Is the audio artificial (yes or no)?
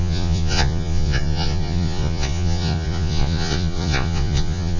yes